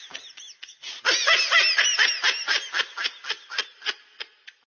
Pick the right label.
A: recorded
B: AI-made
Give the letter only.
A